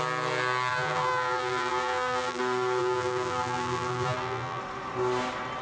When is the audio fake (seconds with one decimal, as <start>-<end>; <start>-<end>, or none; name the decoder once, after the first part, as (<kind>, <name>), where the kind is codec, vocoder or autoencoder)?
0.7-2.4 (vocoder, BigVGAN v2); 2.8-4.6